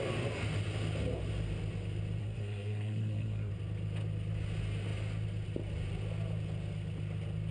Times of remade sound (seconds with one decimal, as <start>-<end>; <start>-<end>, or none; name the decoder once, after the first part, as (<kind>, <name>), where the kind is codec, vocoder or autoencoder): 2.2-3.5 (codec, SNAC)